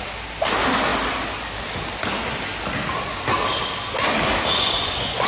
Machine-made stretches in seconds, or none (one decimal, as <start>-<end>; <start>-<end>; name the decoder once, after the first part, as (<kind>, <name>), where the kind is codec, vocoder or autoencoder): 4.5-5.3 (vocoder, Vocos)